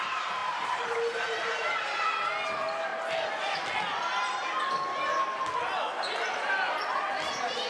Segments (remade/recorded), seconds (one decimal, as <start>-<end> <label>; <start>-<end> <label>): 0.0-2.9 remade; 2.9-7.7 recorded